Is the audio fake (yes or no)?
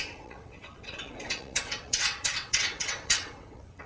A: yes